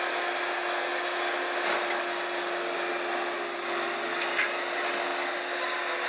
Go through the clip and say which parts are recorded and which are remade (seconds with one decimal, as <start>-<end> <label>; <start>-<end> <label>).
0.0-6.1 recorded